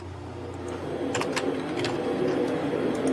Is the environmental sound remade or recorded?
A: recorded